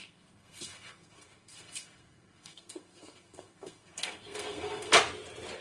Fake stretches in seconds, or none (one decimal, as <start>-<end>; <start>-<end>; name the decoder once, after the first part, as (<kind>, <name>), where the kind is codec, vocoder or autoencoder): 0.0-4.9 (codec, SNAC)